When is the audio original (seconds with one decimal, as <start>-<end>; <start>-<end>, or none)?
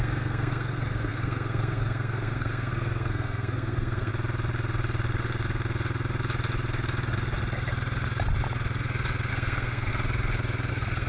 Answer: 4.1-9.3; 9.9-10.7